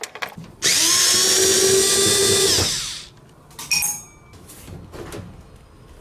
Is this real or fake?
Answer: real